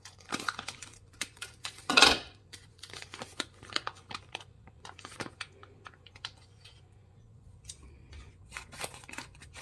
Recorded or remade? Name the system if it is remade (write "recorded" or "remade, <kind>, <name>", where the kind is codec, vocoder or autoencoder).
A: remade, vocoder, Vocos